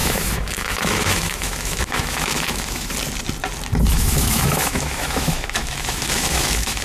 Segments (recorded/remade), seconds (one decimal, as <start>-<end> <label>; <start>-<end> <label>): 0.0-2.9 remade; 2.9-3.9 recorded; 3.9-6.8 remade